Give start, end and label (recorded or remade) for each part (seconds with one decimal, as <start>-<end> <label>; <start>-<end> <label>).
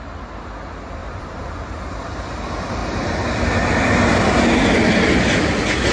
0.0-1.0 recorded; 1.0-1.5 remade; 1.5-5.9 recorded